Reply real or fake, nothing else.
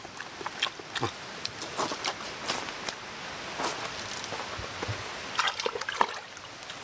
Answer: real